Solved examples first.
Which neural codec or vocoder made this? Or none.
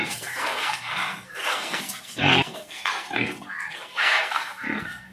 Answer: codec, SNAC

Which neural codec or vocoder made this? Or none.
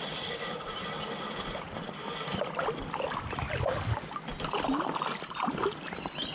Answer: none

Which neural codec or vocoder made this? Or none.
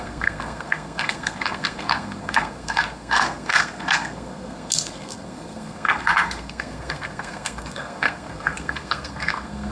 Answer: codec, SNAC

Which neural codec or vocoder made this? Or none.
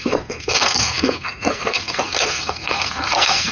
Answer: codec, SNAC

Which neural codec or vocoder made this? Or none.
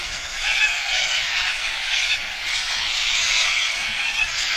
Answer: codec, SNAC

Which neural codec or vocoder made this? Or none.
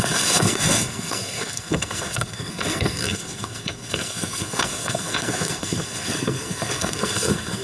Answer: codec, SNAC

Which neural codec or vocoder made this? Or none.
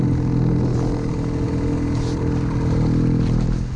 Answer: none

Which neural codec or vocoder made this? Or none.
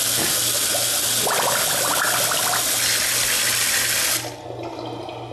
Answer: none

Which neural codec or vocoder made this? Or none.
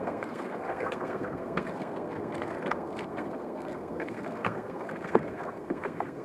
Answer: codec, SNAC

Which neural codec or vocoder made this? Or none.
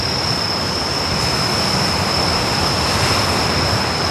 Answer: none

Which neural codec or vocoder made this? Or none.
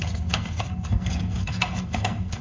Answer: codec, SNAC